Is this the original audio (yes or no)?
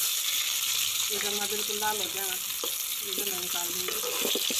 yes